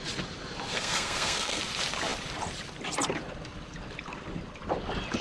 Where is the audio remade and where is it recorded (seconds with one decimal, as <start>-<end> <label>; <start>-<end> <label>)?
0.0-0.7 recorded; 0.7-1.6 remade; 1.6-5.2 recorded